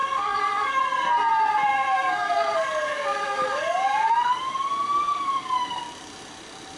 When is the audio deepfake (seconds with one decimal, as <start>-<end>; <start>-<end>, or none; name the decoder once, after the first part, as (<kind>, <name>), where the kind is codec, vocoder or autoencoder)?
0.0-0.8 (codec, DAC); 1.7-5.8